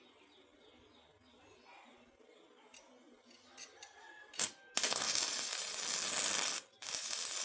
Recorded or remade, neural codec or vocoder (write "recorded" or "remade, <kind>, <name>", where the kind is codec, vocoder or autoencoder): recorded